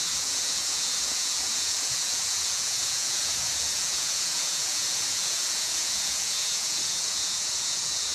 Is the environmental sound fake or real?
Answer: fake